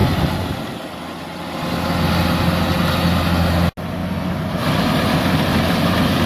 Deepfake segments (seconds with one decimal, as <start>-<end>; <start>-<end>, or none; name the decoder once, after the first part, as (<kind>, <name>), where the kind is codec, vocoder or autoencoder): none